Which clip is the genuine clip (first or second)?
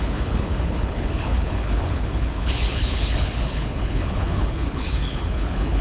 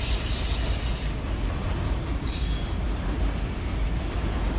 second